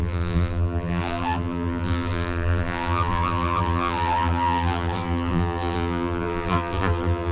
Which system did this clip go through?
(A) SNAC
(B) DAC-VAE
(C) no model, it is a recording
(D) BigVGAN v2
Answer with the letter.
D